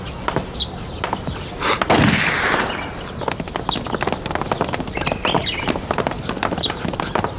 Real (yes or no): yes